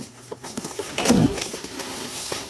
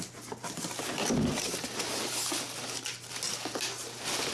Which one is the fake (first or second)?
first